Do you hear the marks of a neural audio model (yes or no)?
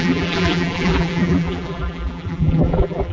yes